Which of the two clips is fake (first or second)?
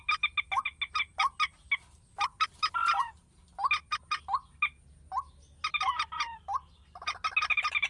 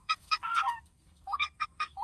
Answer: second